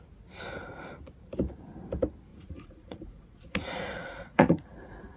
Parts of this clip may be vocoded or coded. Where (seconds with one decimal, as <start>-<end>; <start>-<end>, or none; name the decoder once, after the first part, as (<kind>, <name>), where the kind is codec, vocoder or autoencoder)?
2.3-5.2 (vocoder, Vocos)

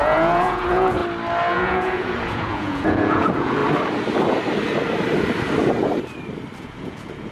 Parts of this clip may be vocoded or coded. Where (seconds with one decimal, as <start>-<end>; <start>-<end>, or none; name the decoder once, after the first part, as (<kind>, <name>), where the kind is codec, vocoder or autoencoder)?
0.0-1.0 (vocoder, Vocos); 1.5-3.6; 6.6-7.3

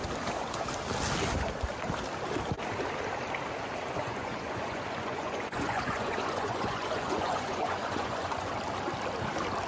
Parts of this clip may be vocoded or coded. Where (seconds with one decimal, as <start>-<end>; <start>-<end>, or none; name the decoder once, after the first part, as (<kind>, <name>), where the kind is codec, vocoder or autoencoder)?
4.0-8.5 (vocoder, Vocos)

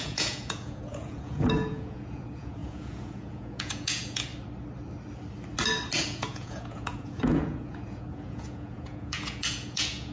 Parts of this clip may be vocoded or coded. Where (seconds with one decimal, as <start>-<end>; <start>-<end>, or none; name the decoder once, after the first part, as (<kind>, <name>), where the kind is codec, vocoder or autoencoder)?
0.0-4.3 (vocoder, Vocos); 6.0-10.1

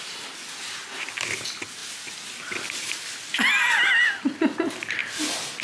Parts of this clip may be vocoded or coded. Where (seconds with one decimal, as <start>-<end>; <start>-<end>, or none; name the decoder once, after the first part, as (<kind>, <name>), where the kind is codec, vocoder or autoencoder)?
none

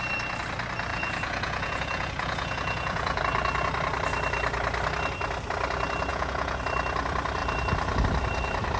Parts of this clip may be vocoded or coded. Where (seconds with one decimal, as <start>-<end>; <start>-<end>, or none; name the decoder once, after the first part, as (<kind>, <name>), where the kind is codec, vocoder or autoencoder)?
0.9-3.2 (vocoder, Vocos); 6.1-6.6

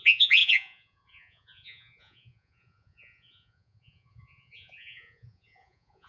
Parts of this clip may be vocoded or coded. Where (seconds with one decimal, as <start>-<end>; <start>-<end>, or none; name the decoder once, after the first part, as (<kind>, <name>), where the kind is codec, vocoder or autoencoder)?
0.0-6.1 (vocoder, Vocos)

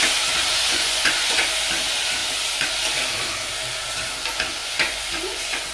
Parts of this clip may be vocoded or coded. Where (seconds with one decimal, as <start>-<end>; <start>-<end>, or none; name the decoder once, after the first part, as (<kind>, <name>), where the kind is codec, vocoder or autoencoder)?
0.5-1.4 (vocoder, Vocos); 4.6-5.7